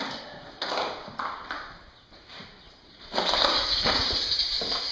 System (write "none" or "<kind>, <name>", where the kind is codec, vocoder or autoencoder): none